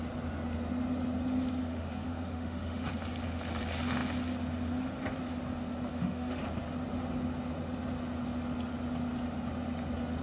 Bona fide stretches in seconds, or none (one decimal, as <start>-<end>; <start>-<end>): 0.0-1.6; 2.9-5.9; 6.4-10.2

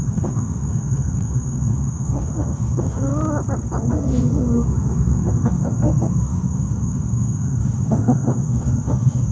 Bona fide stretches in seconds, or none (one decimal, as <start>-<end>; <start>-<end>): 3.1-3.9

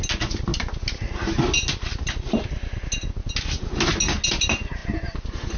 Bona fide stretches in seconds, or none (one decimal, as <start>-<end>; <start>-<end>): 0.0-5.6